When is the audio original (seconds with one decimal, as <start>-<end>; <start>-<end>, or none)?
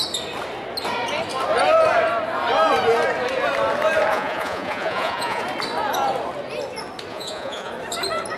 0.0-4.1; 5.4-7.1; 7.7-8.4